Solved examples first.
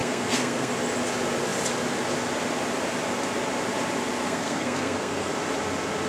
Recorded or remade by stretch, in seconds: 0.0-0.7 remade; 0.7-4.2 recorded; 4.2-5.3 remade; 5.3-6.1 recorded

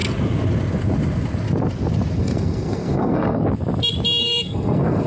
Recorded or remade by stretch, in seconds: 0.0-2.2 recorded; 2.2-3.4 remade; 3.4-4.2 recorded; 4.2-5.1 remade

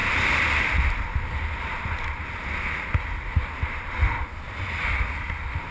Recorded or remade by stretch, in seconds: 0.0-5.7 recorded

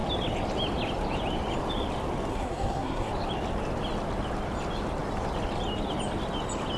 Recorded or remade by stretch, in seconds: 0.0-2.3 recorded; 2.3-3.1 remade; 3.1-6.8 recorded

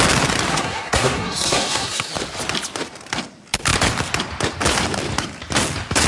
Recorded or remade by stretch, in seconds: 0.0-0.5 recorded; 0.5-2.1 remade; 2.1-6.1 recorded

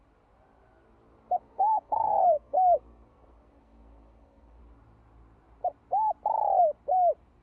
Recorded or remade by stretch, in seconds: 0.0-1.4 recorded; 1.4-4.6 remade; 4.6-7.4 recorded